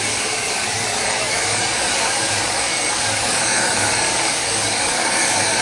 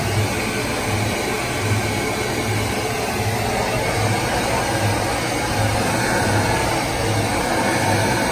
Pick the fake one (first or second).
first